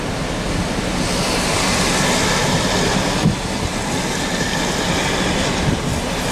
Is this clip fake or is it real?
real